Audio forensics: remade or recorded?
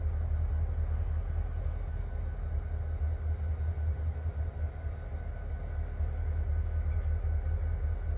recorded